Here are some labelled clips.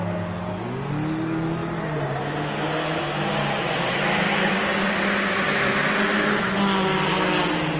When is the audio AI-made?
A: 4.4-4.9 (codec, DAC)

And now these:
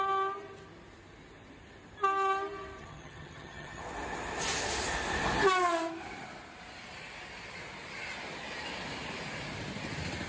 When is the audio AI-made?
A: 2.8-3.8 (vocoder, HiFi-GAN)

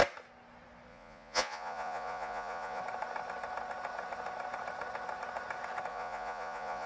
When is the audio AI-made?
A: 0.9-2.8 (vocoder, Vocos); 5.9-6.9